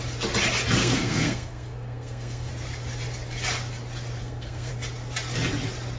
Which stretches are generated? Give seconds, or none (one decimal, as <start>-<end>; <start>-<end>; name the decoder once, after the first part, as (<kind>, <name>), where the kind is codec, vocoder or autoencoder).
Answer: 0.8-2.5 (codec, SNAC); 4.2-4.7